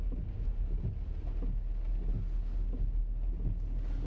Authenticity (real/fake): real